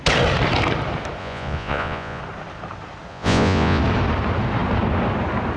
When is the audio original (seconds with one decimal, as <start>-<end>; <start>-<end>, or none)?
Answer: 0.0-1.2; 2.2-3.1; 3.8-5.6